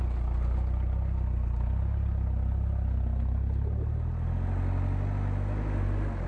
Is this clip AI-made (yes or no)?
no